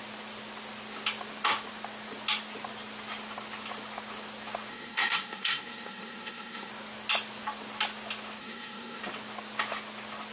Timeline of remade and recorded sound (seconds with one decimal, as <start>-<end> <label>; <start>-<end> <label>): 0.0-4.7 recorded; 4.7-6.7 remade; 6.7-8.4 recorded; 8.4-9.0 remade; 9.0-10.3 recorded